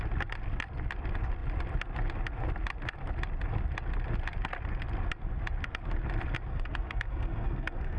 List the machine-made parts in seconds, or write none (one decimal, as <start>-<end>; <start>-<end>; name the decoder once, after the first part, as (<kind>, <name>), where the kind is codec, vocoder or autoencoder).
6.5-8.0 (codec, SNAC)